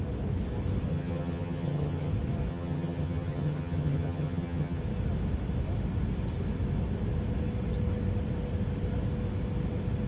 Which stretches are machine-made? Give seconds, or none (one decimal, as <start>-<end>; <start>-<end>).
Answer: 0.9-2.1; 2.5-4.8